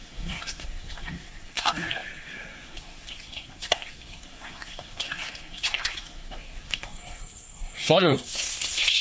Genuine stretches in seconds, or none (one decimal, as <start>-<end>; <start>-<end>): none